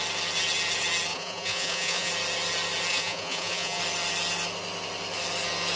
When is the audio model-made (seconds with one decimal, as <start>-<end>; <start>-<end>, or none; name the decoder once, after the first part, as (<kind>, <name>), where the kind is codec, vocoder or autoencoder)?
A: 1.1-2.1 (vocoder, Vocos); 2.9-3.8